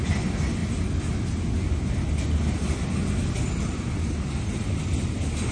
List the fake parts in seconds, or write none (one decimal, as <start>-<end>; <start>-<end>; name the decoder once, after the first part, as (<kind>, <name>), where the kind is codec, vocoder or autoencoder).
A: none

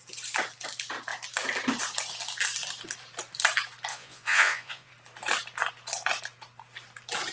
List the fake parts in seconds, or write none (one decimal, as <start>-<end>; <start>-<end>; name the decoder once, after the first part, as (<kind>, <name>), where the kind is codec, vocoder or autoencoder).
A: 3.9-4.9 (vocoder, Vocos)

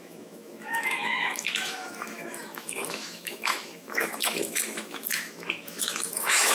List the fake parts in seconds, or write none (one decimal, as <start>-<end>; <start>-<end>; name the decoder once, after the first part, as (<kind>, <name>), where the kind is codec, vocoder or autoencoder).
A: 0.0-6.5 (autoencoder, DAC-VAE)

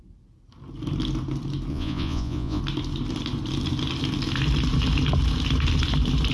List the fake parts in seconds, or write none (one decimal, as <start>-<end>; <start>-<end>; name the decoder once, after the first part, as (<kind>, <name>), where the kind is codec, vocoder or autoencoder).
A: 1.7-2.6 (vocoder, Vocos)

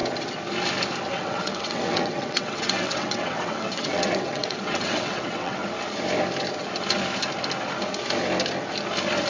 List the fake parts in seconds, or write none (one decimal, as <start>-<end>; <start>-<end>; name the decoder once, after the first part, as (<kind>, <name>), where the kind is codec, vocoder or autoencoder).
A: 1.1-5.6 (vocoder, WaveNeXt)

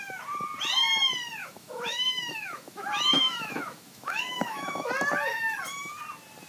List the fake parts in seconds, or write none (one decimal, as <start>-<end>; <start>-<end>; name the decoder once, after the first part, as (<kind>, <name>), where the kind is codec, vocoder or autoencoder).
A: 1.4-4.9 (autoencoder, DAC-VAE)

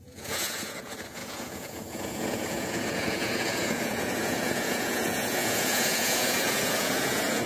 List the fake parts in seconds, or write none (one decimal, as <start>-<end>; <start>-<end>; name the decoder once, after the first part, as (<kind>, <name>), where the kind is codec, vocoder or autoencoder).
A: 0.0-7.5 (vocoder, Vocos)